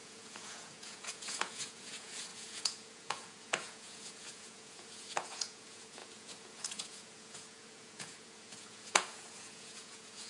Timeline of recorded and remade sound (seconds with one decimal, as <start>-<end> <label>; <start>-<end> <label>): 0.0-10.3 remade